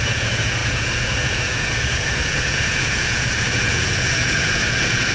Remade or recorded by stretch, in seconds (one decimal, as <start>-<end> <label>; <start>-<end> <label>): 0.0-5.1 remade